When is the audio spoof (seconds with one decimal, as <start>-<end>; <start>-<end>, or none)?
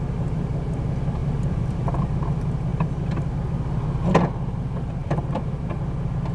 1.2-2.3; 5.0-5.6